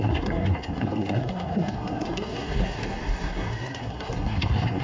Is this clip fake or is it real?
fake